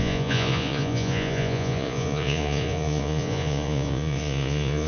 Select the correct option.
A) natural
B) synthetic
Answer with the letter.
B